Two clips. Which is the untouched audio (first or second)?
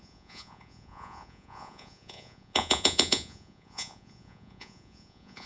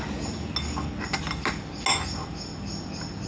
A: second